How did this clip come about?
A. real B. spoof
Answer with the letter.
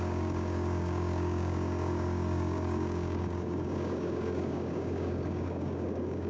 B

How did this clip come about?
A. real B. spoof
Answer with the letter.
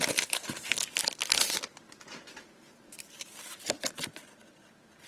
A